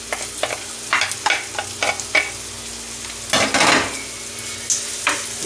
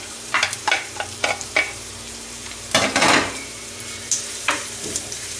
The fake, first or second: second